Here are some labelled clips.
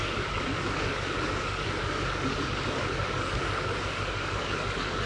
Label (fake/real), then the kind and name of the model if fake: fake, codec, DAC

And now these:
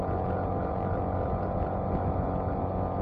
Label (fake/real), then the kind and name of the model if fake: real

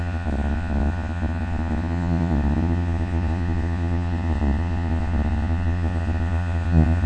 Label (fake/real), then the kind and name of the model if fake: fake, vocoder, Vocos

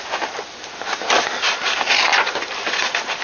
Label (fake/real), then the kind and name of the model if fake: real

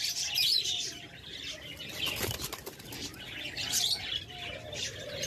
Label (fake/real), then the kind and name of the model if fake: real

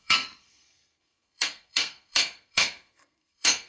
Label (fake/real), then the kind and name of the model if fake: fake, codec, SNAC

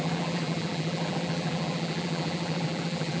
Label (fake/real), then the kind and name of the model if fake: fake, vocoder, BigVGAN v2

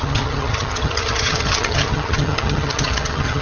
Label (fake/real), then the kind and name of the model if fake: fake, vocoder, HiFi-GAN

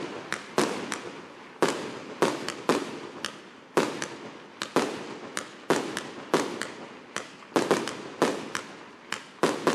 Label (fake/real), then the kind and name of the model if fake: real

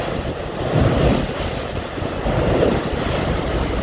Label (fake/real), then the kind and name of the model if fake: real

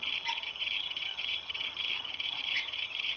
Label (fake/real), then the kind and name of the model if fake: fake, vocoder, HiFi-GAN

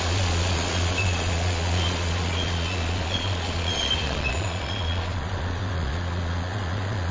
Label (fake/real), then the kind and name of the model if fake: fake, vocoder, Vocos